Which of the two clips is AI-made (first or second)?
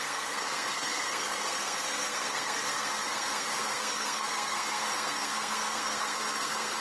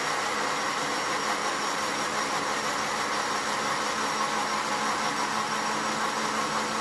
first